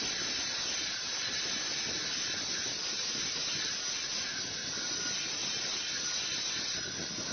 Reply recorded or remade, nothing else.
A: recorded